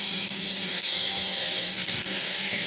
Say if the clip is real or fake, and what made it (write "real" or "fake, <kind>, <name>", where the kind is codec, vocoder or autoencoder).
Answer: fake, codec, DAC